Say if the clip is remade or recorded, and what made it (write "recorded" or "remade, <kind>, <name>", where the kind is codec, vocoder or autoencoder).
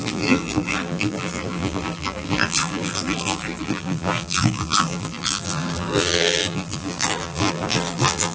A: remade, vocoder, BigVGAN v2